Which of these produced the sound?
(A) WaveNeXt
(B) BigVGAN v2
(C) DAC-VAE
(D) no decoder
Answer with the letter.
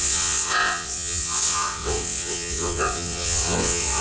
A